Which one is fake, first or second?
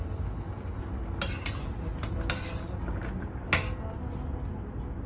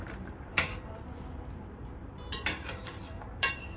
second